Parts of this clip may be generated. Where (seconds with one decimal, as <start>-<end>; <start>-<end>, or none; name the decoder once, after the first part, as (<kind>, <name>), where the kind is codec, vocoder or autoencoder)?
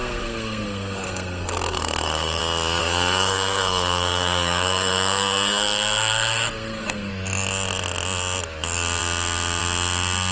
0.0-2.4 (codec, SNAC); 2.8-7.1